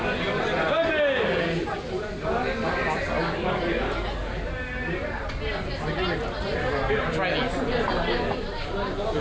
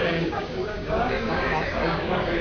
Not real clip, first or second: second